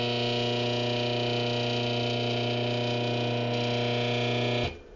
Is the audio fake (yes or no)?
no